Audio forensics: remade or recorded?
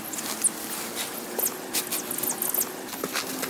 recorded